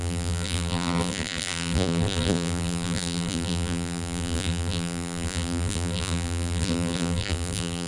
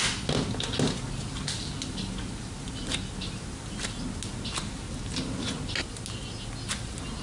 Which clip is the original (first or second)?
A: second